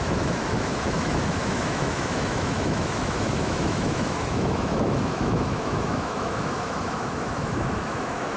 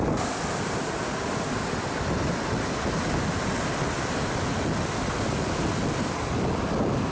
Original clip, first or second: second